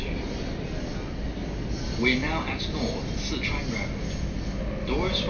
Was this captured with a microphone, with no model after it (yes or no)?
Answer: yes